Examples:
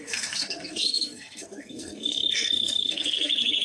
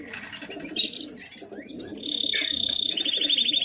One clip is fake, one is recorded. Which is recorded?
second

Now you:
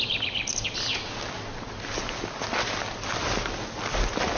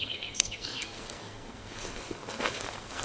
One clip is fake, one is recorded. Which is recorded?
first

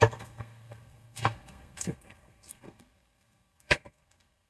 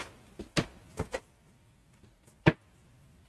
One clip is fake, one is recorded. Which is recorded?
second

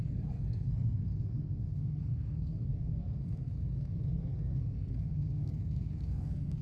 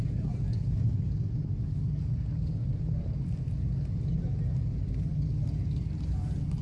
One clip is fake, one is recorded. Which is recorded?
second